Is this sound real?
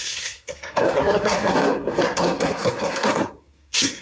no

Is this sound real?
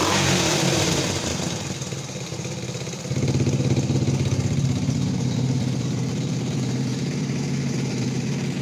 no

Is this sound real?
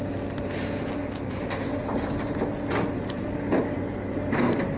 yes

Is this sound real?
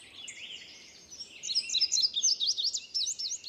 yes